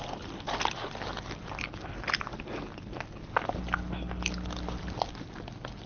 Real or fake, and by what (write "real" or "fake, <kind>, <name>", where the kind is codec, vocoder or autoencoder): real